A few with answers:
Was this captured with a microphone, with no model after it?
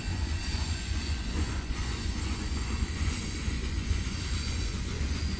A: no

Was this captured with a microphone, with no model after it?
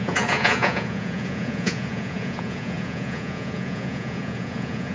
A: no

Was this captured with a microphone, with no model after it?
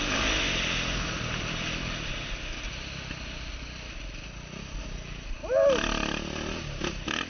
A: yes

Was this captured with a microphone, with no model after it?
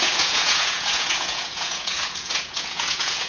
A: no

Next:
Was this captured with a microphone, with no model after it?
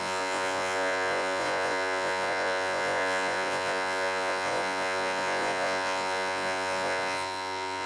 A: no